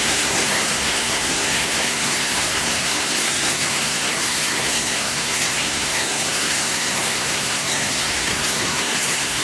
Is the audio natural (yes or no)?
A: no